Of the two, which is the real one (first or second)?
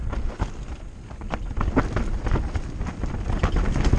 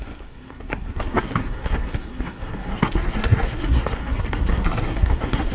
first